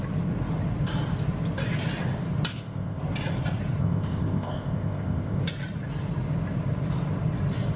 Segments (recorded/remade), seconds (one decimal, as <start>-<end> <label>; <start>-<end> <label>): 0.0-2.5 recorded; 2.5-3.0 remade; 3.0-3.8 recorded; 3.8-5.4 remade; 5.4-7.8 recorded